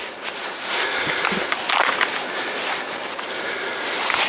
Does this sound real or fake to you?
real